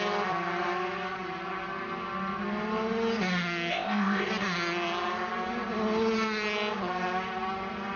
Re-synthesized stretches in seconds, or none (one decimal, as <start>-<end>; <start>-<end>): 3.7-4.3